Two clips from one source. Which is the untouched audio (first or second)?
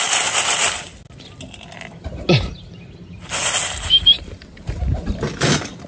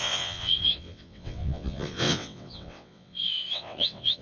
first